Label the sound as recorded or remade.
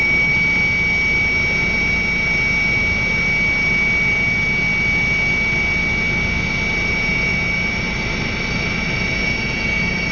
recorded